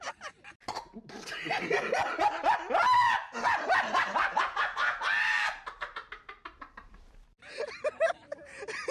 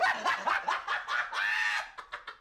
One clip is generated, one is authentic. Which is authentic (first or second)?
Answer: second